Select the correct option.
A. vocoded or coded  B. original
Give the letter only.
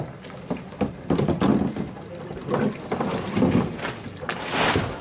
B